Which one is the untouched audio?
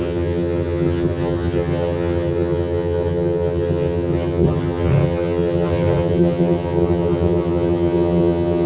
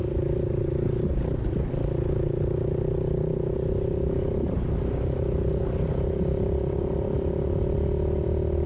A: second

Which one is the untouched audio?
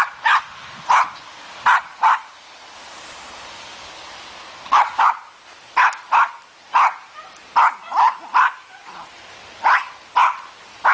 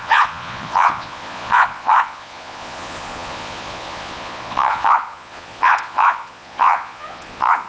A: first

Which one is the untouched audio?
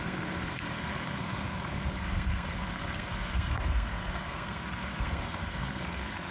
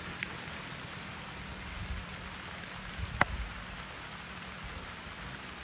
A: second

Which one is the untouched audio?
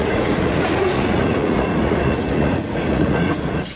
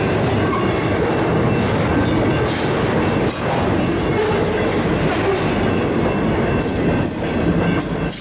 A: second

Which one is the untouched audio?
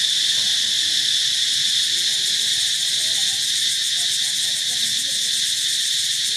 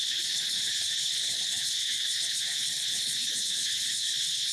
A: first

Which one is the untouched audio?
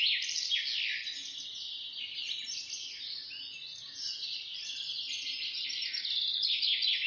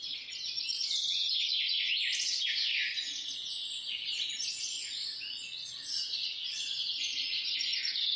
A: first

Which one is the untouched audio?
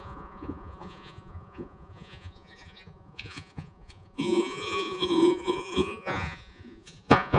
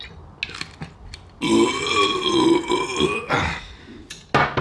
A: second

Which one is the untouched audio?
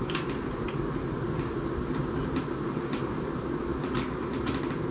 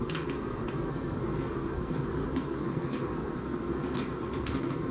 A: first